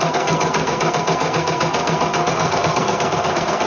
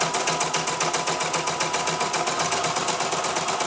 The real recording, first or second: second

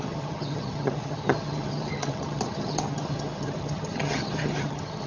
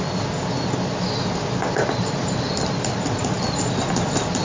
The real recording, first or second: second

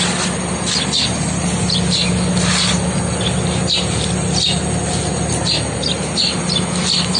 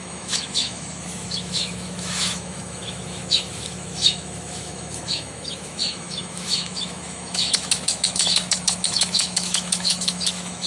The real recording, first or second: first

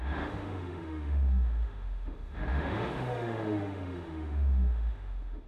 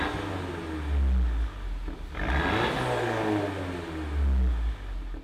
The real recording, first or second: second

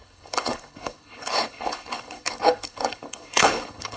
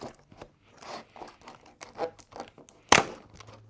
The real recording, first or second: second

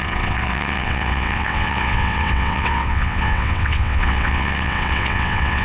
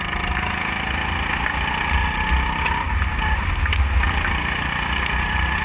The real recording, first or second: second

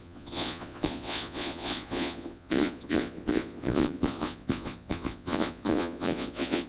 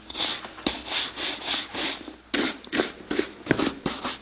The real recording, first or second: second